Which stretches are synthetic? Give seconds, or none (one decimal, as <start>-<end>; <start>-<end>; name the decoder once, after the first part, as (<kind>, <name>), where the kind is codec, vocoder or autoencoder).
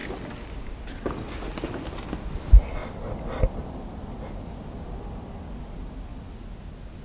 none